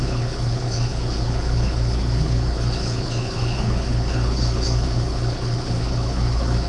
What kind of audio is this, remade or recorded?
remade